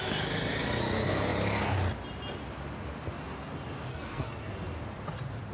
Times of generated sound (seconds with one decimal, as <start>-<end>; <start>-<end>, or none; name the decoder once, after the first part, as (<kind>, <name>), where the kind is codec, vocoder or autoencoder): 3.9-4.5 (codec, SNAC)